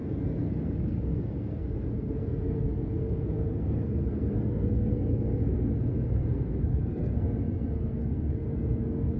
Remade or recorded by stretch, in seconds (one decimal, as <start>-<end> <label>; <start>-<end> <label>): 0.0-9.2 remade